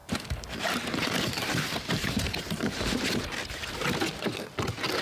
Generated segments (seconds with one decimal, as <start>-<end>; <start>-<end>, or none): 0.0-3.0